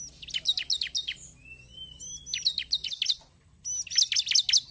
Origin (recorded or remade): recorded